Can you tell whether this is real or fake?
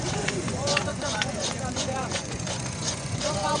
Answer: fake